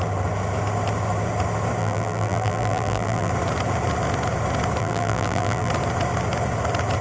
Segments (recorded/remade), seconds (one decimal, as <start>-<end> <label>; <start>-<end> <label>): 0.0-1.8 recorded; 1.8-3.3 remade; 3.3-4.8 recorded; 4.8-5.7 remade; 5.7-7.0 recorded